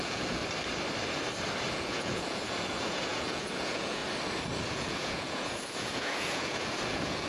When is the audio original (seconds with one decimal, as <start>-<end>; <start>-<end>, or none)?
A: 0.4-1.7; 4.0-4.6